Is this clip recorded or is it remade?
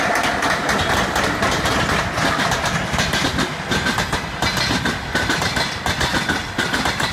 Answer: recorded